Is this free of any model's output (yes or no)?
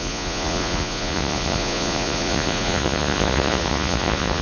no